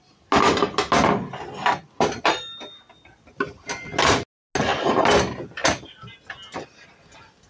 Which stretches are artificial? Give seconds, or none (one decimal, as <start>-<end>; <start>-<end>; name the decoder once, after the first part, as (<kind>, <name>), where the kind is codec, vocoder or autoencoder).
none